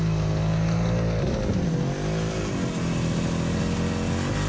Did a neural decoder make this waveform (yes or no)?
no